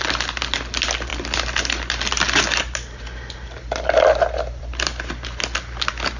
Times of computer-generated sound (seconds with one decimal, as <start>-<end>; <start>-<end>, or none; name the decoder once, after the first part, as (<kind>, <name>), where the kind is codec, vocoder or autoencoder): none